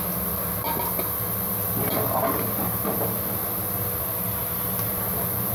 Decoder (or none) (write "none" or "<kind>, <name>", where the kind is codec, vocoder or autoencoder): none